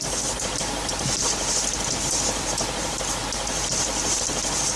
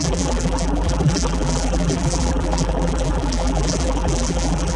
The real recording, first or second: first